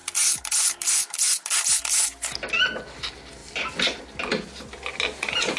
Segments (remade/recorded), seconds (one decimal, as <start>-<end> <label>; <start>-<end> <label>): 0.0-3.4 recorded; 3.4-4.0 remade; 4.0-5.6 recorded